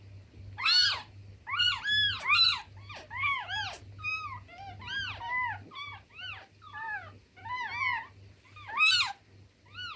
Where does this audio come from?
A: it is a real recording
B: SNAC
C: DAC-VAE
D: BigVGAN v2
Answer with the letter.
A